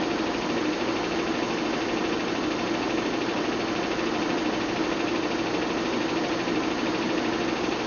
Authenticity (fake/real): real